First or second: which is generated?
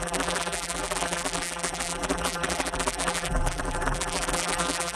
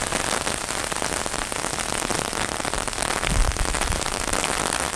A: first